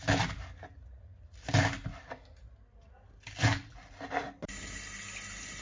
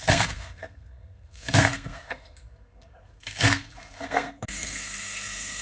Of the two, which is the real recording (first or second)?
first